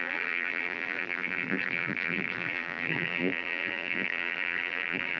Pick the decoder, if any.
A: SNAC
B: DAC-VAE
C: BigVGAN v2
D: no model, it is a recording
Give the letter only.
C